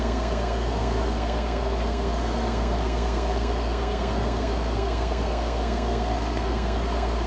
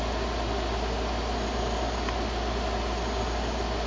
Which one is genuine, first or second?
second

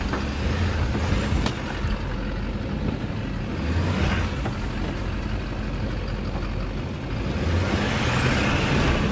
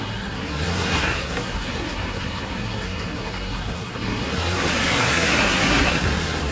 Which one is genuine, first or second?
first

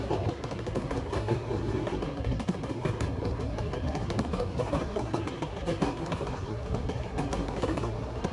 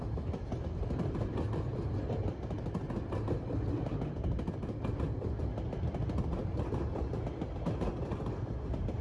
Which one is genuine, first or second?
second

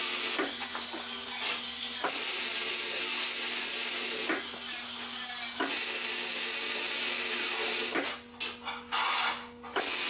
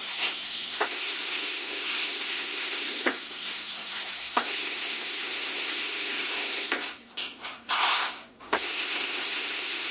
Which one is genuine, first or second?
first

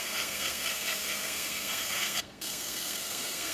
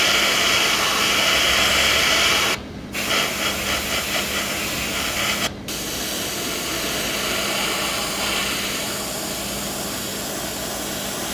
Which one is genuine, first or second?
second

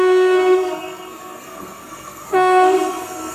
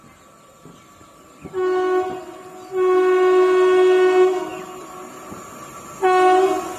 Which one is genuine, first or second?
second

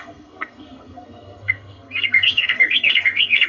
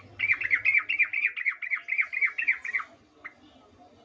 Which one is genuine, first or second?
second